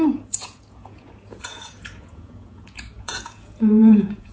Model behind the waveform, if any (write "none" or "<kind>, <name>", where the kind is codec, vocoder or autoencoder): vocoder, Vocos